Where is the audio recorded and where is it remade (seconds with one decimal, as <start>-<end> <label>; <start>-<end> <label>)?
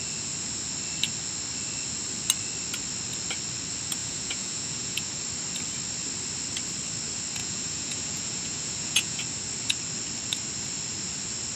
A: 0.0-4.0 recorded; 4.0-5.2 remade; 5.2-7.4 recorded; 7.4-9.2 remade; 9.2-11.6 recorded